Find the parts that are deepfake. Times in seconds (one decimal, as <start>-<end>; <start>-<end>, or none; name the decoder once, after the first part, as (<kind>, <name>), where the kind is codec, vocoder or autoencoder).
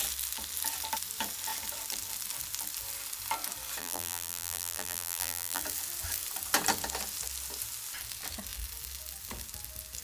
3.8-5.6 (vocoder, BigVGAN v2)